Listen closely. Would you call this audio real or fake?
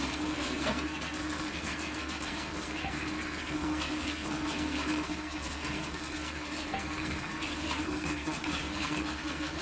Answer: fake